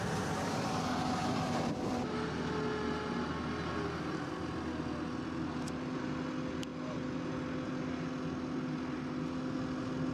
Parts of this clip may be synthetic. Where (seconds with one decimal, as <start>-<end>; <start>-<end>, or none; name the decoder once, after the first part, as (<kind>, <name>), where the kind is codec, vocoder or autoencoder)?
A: 1.2-2.0 (vocoder, BigVGAN v2)